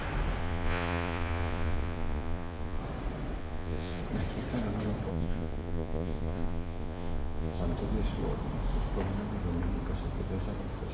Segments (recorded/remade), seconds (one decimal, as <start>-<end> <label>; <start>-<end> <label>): 0.0-0.4 recorded; 0.4-2.8 remade; 2.8-3.4 recorded; 3.4-4.0 remade; 4.0-5.1 recorded; 5.1-7.6 remade; 7.6-10.9 recorded